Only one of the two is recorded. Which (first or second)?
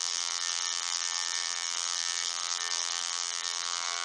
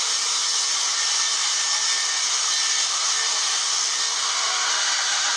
second